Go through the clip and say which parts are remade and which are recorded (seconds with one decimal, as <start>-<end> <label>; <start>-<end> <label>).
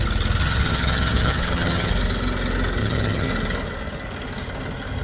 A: 0.0-0.4 recorded; 0.4-1.9 remade; 1.9-2.8 recorded; 2.8-3.3 remade; 3.3-5.0 recorded